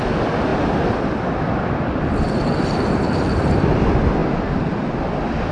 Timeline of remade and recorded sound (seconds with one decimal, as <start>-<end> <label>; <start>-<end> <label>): 0.0-5.5 recorded